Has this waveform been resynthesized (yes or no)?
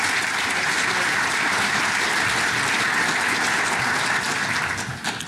no